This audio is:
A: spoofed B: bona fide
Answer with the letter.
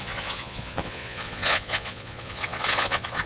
A